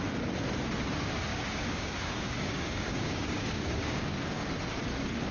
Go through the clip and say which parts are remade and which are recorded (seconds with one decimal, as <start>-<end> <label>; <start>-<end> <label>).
0.0-1.3 recorded; 1.3-4.5 remade; 4.5-5.3 recorded

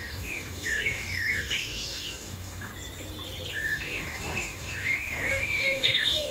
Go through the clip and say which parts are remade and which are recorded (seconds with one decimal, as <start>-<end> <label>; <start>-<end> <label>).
0.0-2.7 remade; 2.7-3.5 recorded; 3.5-6.3 remade

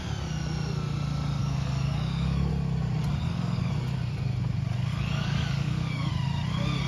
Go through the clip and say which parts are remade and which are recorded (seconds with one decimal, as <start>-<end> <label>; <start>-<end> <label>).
0.0-1.4 recorded; 1.4-2.5 remade; 2.5-3.2 recorded; 3.2-3.7 remade; 3.7-4.9 recorded; 4.9-6.1 remade; 6.1-6.9 recorded

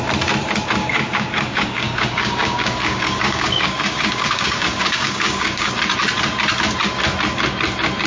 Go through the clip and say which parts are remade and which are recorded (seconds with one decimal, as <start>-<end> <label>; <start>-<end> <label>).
0.0-0.8 recorded; 0.8-5.7 remade; 5.7-8.1 recorded

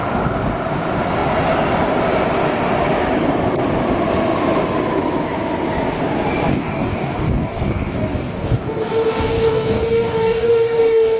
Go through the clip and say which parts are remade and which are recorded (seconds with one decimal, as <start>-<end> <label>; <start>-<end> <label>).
0.0-6.5 recorded; 6.5-11.2 remade

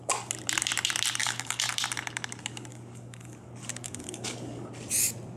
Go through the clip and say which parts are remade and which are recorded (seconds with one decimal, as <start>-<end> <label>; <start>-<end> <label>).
0.0-1.2 recorded; 1.2-1.7 remade; 1.7-2.7 recorded; 2.7-4.7 remade; 4.7-5.4 recorded